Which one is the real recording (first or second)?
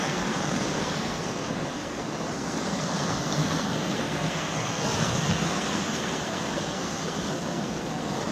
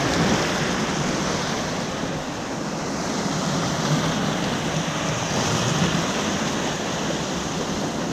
second